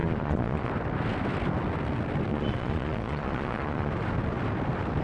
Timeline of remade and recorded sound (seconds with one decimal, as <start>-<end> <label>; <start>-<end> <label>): 0.0-0.7 remade; 0.7-2.3 recorded; 2.3-3.9 remade; 3.9-5.0 recorded